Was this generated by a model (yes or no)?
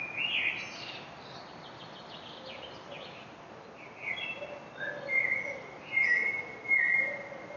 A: no